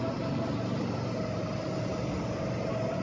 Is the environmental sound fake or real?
real